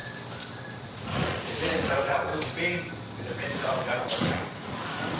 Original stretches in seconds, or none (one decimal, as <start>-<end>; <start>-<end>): 0.0-0.7; 2.3-3.2